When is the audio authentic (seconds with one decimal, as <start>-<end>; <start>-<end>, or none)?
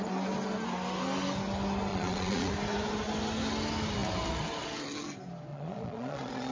0.0-1.9; 2.5-5.5